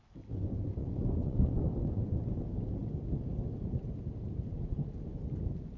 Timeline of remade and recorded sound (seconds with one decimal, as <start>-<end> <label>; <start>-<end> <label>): 0.0-0.8 recorded; 0.8-2.2 remade; 2.2-5.8 recorded

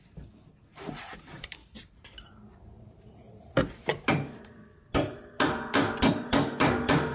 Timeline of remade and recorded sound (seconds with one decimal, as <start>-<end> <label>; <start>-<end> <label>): 0.0-0.7 recorded; 0.7-4.9 remade; 4.9-7.1 recorded